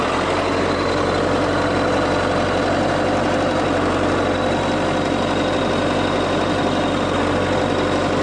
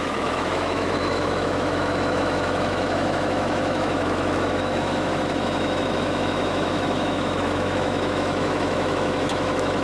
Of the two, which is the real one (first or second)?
first